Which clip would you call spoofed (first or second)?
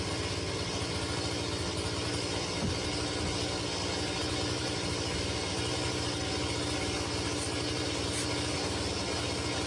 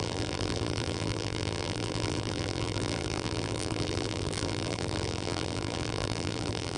second